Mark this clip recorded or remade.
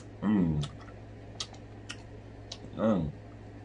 recorded